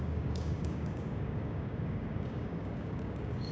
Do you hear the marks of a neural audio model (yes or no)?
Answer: yes